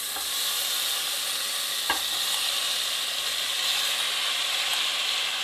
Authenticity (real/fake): real